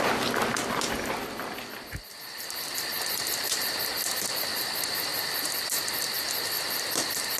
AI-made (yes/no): no